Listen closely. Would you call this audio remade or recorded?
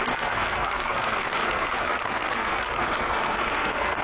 remade